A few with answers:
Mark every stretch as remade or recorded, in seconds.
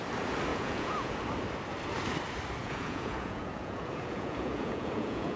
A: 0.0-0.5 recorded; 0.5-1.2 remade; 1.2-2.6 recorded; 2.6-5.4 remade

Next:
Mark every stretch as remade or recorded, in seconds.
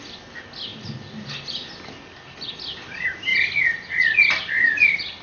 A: 0.0-5.2 recorded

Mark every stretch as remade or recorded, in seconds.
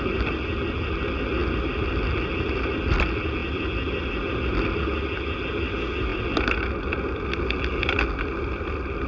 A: 0.0-9.1 recorded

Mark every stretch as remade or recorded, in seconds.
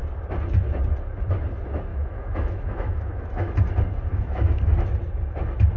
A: 0.0-1.9 recorded; 1.9-3.5 remade; 3.5-4.1 recorded; 4.1-4.6 remade; 4.6-5.8 recorded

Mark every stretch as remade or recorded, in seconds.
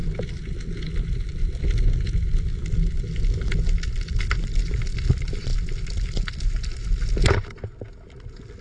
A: 0.0-8.6 recorded